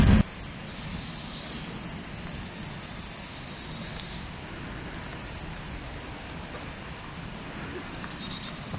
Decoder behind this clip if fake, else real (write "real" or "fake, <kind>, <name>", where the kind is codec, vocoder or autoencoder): real